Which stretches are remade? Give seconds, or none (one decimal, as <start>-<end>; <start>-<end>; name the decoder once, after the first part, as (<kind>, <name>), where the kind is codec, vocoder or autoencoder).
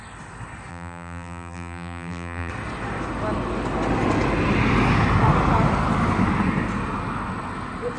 0.7-2.5 (vocoder, BigVGAN v2)